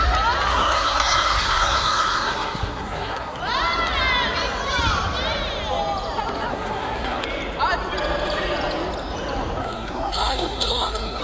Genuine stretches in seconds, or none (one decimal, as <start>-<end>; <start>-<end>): 0.0-0.5; 3.4-6.5; 7.2-9.6